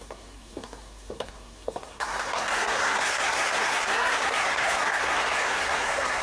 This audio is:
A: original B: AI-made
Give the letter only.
B